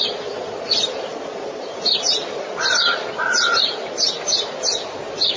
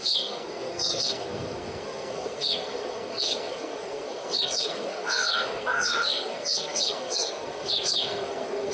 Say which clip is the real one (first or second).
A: first